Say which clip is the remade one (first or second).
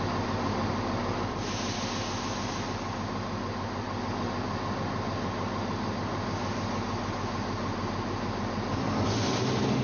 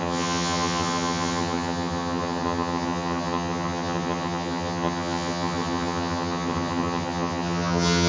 second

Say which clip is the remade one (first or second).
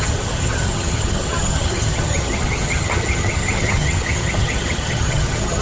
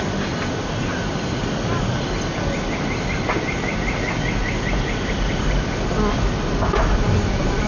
first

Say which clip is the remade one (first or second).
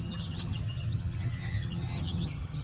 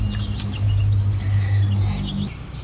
first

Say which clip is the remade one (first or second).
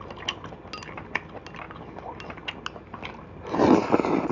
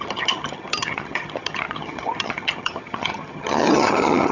second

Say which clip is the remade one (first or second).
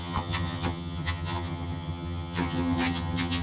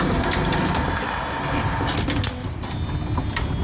first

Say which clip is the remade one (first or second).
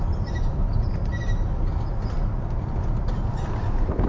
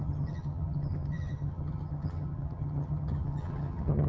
second